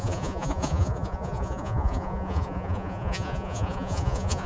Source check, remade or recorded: remade